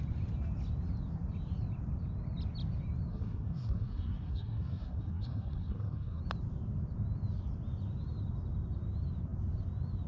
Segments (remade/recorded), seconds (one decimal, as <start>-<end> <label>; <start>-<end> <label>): 0.0-3.1 recorded; 3.1-6.2 remade; 6.2-10.1 recorded